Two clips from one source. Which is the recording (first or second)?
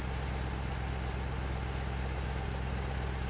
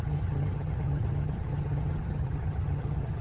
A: first